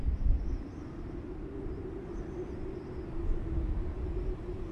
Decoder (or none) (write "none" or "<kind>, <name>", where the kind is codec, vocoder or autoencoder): none